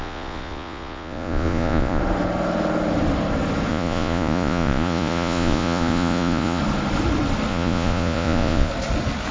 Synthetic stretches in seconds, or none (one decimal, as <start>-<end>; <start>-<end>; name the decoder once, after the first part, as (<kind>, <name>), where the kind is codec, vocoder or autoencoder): 0.0-2.0 (vocoder, Vocos); 3.7-6.6; 7.5-8.7